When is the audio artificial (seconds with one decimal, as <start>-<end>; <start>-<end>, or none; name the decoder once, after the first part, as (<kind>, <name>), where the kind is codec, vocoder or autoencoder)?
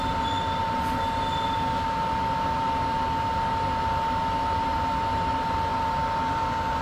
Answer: none